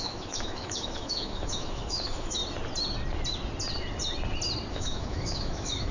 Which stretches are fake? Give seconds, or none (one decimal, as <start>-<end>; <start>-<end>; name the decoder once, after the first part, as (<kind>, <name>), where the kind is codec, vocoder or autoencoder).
0.0-2.4 (autoencoder, DAC-VAE); 4.7-5.9